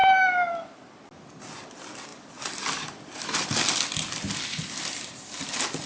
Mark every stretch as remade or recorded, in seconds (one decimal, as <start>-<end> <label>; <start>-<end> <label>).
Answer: 0.0-5.9 recorded